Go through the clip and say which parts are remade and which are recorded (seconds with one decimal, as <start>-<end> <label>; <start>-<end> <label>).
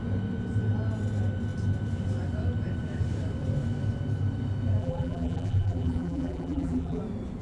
0.0-4.8 recorded; 4.8-7.0 remade; 7.0-7.4 recorded